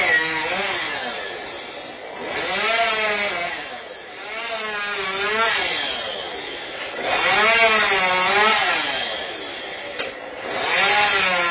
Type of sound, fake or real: real